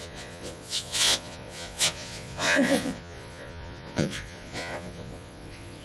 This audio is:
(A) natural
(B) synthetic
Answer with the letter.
B